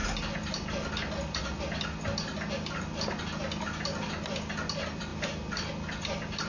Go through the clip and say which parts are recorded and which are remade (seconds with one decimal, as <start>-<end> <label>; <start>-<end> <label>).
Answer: 0.0-6.5 recorded

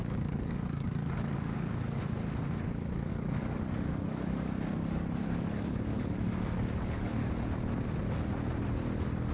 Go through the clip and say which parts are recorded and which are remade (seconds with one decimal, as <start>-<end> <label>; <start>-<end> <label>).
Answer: 0.0-2.0 remade; 2.0-3.1 recorded; 3.1-7.3 remade; 7.3-9.3 recorded